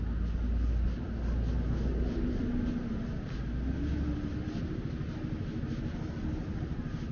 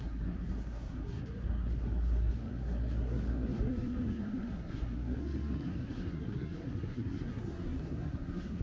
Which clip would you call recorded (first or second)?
first